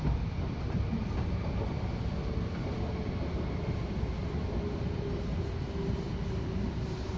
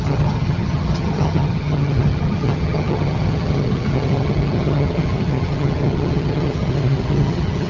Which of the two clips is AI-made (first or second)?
second